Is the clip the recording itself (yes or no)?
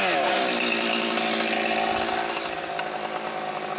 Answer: yes